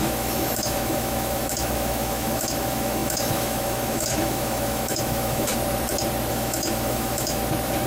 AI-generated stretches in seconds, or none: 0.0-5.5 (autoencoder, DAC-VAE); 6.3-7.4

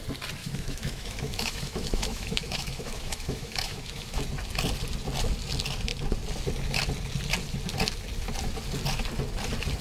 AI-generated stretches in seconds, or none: 0.4-4.2 (autoencoder, DAC-VAE)

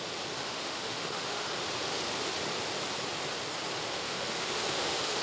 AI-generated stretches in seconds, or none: 0.4-1.5 (autoencoder, DAC-VAE); 3.9-5.2

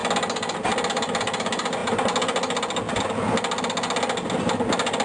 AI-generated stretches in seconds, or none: none